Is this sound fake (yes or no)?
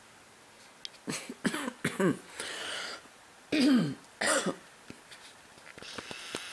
no